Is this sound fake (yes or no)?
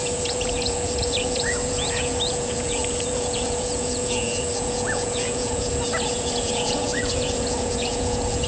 yes